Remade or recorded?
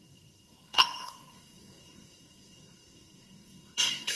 remade